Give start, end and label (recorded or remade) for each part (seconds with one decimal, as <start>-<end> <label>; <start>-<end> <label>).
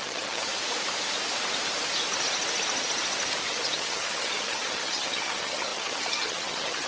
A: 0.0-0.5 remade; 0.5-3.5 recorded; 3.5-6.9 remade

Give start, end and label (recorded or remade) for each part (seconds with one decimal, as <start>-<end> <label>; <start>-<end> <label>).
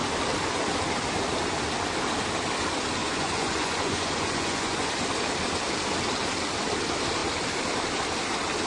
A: 0.0-3.0 recorded; 3.0-4.9 remade; 4.9-8.7 recorded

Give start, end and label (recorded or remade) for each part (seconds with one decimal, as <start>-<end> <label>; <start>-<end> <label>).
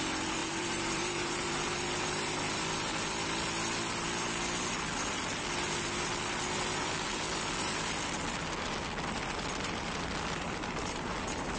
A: 0.0-0.4 recorded; 0.4-1.5 remade; 1.5-11.6 recorded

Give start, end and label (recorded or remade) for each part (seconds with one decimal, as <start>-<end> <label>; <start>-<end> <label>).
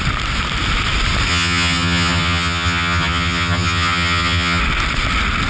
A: 0.0-1.3 recorded; 1.3-4.6 remade; 4.6-5.5 recorded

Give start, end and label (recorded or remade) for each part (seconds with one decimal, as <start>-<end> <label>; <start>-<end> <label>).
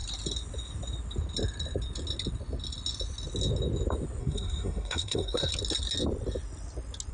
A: 0.0-4.2 recorded; 4.2-5.5 remade; 5.5-7.1 recorded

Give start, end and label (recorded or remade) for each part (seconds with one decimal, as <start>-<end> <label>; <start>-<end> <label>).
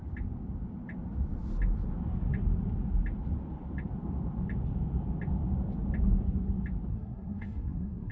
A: 0.0-6.9 recorded; 6.9-8.1 remade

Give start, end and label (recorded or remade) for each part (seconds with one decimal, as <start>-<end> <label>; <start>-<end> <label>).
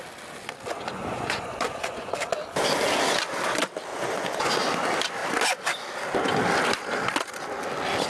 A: 0.0-0.7 recorded; 0.7-2.1 remade; 2.1-3.9 recorded; 3.9-4.5 remade; 4.5-8.1 recorded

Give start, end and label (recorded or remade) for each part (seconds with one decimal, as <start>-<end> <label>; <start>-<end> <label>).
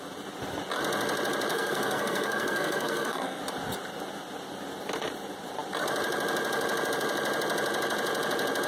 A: 0.0-1.5 recorded; 1.5-3.4 remade; 3.4-8.7 recorded